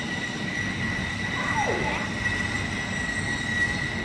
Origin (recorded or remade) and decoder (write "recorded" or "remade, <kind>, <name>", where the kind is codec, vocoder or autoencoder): recorded